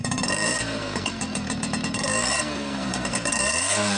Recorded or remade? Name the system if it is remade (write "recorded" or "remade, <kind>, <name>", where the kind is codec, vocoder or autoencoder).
remade, codec, SNAC